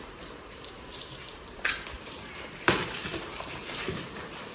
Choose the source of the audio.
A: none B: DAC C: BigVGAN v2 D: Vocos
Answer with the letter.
C